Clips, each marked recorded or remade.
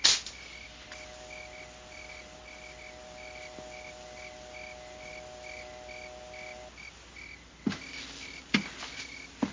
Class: recorded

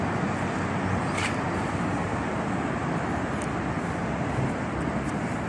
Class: recorded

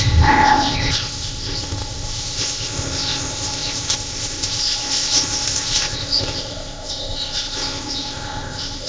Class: remade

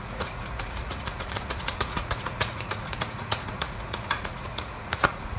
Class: remade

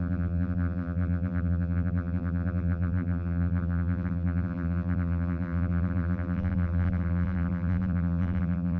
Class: remade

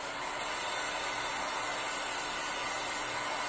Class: recorded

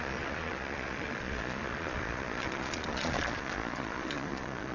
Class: remade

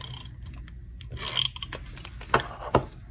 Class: recorded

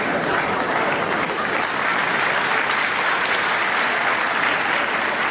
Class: recorded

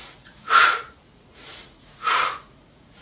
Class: remade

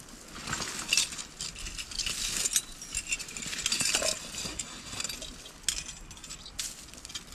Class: recorded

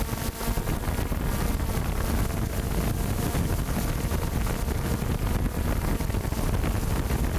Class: recorded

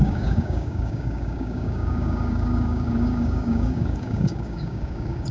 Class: remade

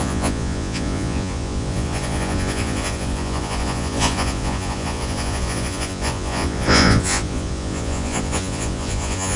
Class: remade